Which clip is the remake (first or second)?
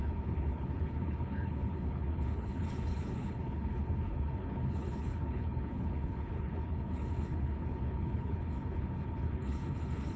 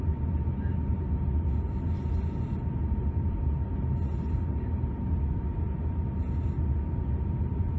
first